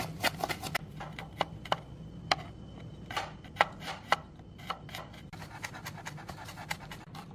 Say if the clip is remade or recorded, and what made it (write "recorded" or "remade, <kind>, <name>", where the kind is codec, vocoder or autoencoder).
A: recorded